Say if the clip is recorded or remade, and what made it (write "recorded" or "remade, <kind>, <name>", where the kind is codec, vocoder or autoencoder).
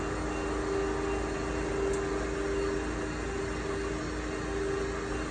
recorded